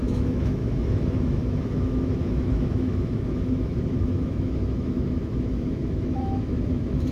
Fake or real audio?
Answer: fake